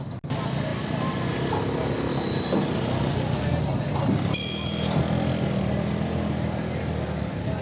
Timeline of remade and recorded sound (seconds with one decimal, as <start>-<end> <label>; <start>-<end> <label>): 0.0-7.6 recorded